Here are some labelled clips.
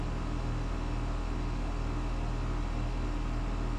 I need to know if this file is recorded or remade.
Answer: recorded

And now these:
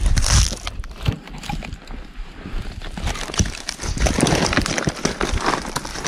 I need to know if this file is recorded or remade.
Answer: recorded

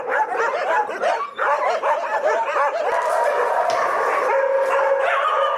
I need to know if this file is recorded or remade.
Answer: recorded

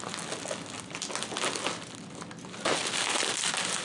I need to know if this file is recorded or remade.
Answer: recorded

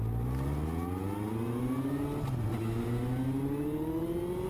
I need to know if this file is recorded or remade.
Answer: recorded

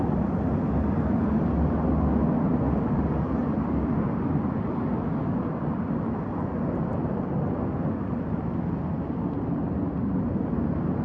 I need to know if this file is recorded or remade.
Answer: recorded